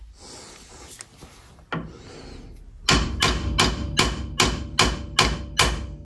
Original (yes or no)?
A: yes